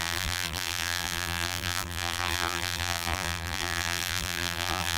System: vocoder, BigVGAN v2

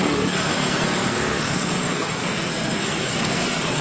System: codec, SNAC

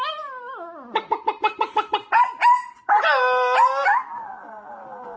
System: none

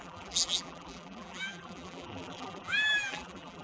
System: vocoder, BigVGAN v2